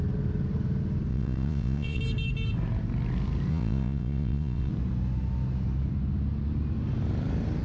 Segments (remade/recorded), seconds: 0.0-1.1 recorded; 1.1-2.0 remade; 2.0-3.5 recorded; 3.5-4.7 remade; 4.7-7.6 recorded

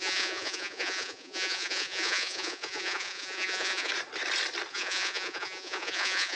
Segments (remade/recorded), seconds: 0.0-3.9 remade; 3.9-4.7 recorded; 4.7-6.4 remade

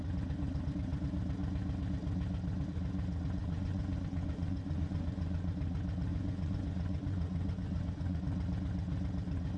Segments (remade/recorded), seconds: 0.0-3.4 recorded; 3.4-5.5 remade; 5.5-6.1 recorded; 6.1-8.2 remade; 8.2-9.6 recorded

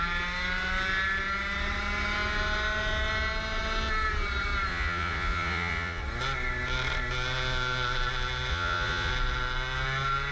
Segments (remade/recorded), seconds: 0.0-4.7 recorded; 4.7-6.0 remade; 6.0-8.5 recorded; 8.5-9.1 remade; 9.1-10.3 recorded

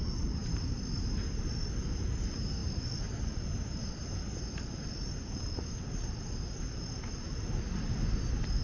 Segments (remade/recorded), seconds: 0.0-8.6 recorded

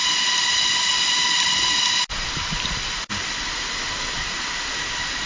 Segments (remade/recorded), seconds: 0.0-5.3 recorded

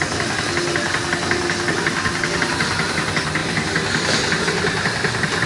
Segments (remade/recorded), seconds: 0.0-5.5 recorded

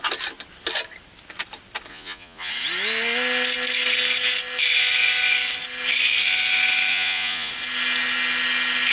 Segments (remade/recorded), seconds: 0.0-1.9 recorded; 1.9-2.5 remade; 2.5-6.9 recorded; 6.9-7.5 remade; 7.5-8.9 recorded